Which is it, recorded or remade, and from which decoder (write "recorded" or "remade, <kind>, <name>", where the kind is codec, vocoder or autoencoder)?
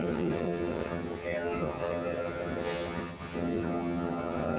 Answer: remade, vocoder, HiFi-GAN